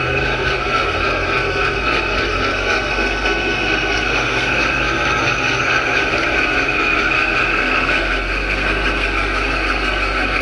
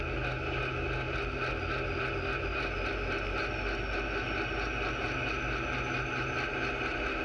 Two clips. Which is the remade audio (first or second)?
first